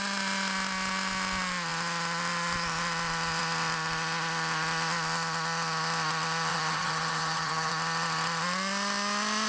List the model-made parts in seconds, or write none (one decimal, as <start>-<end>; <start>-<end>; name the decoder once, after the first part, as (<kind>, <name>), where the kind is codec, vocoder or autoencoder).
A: 6.5-7.7 (vocoder, HiFi-GAN)